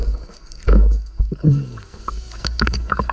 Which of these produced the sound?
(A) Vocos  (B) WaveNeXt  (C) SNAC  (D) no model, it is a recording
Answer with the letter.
C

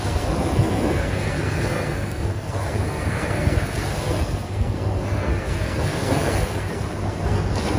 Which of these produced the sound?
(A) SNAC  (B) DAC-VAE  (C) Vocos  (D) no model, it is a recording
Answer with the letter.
A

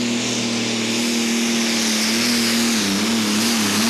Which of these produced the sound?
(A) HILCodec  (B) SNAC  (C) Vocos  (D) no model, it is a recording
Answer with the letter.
D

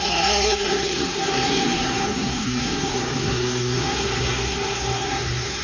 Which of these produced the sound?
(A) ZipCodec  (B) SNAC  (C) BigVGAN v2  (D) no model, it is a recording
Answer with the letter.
B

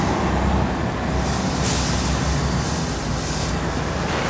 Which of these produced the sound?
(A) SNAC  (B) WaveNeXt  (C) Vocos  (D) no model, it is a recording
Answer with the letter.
D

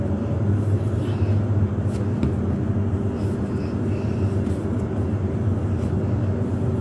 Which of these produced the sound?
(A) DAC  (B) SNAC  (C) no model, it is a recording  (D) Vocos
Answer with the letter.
C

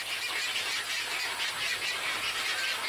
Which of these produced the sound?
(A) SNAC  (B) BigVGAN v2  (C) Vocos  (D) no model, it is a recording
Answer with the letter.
D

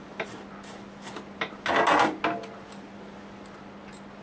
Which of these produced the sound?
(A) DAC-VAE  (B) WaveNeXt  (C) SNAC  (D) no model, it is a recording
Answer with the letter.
D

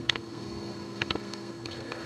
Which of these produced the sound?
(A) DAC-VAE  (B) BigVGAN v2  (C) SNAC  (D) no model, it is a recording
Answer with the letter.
C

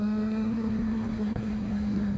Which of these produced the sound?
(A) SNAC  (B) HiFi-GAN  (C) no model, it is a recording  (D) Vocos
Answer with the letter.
A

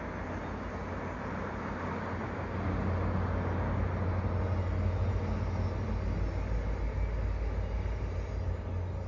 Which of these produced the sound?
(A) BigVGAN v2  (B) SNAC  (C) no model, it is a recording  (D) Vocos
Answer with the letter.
C